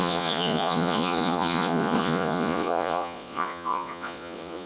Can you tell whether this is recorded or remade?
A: remade